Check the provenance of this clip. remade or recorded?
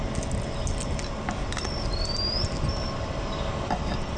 recorded